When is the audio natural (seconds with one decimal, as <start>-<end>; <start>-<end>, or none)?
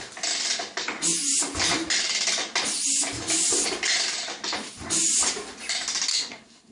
0.0-6.1